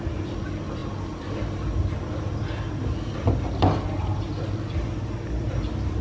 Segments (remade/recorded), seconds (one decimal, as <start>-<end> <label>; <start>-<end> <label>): 0.0-6.0 recorded